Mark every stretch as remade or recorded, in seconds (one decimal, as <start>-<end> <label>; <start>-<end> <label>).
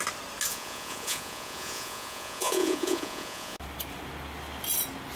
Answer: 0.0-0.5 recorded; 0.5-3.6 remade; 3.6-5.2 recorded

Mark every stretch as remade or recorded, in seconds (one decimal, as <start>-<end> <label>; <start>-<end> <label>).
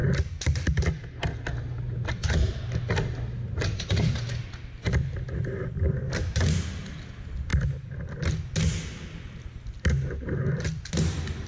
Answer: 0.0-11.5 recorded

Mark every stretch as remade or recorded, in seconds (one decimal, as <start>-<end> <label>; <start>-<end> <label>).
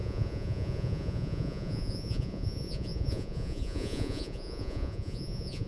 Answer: 0.0-5.7 remade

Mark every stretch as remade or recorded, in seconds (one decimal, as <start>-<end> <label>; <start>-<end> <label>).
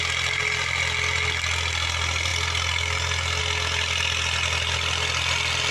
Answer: 0.0-5.7 recorded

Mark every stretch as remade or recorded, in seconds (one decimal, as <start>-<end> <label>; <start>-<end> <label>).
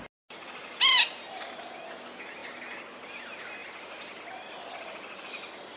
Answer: 0.0-5.8 recorded